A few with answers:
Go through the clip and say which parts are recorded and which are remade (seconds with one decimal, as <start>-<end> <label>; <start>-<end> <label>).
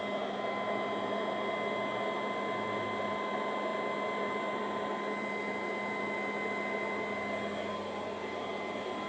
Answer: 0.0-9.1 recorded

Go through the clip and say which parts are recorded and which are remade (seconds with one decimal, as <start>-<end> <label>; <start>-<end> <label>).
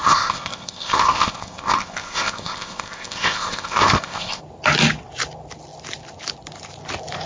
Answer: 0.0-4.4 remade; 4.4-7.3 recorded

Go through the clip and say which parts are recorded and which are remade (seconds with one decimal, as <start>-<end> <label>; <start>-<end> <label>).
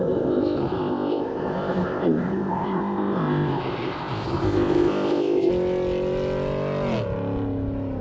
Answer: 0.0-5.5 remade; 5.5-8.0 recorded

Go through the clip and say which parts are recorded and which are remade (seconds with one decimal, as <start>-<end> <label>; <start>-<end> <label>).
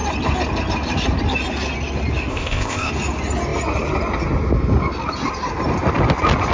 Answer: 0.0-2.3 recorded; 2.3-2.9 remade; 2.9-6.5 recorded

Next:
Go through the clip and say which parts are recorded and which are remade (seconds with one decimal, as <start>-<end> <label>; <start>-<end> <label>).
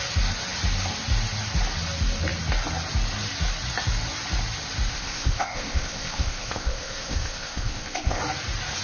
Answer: 0.0-4.9 recorded; 4.9-8.2 remade; 8.2-8.8 recorded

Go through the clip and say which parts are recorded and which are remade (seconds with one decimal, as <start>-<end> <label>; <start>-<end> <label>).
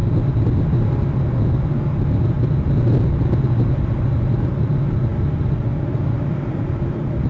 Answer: 0.0-7.3 recorded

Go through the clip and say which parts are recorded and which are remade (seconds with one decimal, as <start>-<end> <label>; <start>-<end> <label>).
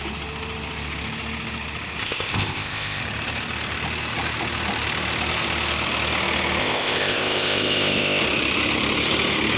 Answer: 0.0-2.0 recorded; 2.0-3.0 remade; 3.0-6.6 recorded; 6.6-8.2 remade; 8.2-9.6 recorded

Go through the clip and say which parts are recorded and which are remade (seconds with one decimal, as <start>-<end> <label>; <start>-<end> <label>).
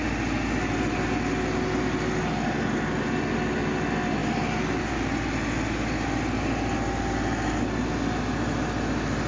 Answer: 0.0-9.3 recorded